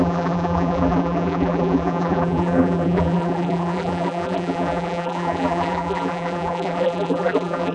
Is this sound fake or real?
fake